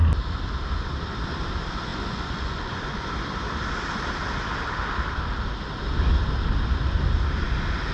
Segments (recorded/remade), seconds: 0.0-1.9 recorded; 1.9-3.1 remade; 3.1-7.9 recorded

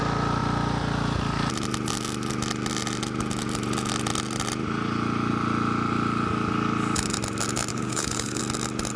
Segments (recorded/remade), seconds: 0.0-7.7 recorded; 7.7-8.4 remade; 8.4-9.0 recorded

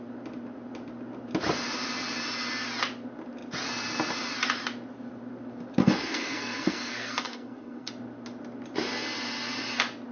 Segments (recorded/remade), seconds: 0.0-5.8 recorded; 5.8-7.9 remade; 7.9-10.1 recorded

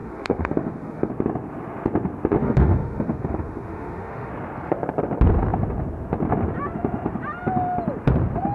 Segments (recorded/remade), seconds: 0.0-1.1 remade; 1.1-2.4 recorded; 2.4-4.3 remade; 4.3-8.5 recorded

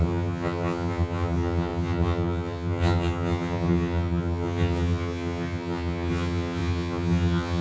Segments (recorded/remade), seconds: 0.0-7.6 remade

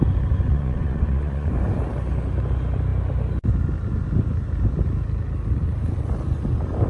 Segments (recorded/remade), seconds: 0.0-0.5 recorded; 0.5-1.5 remade; 1.5-6.9 recorded